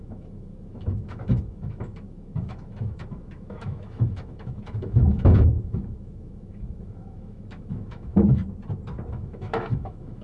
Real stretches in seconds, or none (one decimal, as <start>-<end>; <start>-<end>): 8.4-9.1